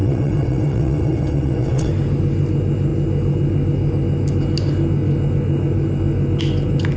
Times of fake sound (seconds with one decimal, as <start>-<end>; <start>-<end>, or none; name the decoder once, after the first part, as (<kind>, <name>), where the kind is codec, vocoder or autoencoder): 0.0-1.9 (vocoder, WaveNeXt)